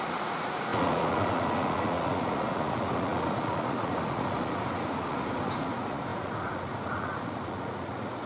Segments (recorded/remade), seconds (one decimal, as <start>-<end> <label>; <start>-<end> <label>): 0.0-8.3 remade